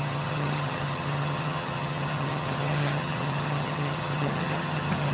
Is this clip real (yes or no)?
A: no